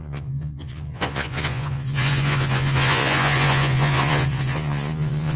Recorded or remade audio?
remade